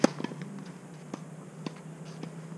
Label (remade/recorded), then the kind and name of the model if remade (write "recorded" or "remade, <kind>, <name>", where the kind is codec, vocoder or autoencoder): recorded